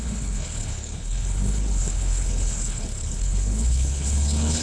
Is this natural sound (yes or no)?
no